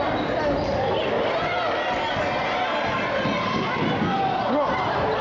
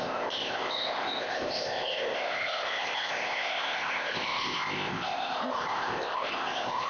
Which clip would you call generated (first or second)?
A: second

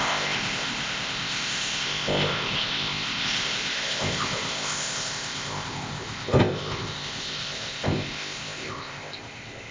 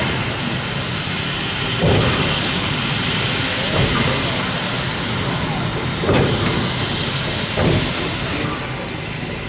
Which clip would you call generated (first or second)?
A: first